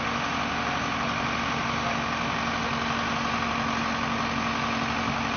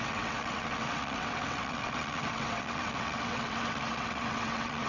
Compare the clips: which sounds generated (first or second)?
second